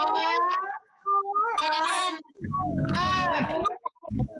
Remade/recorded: remade